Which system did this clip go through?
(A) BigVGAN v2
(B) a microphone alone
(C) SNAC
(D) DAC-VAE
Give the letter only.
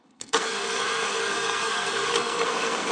C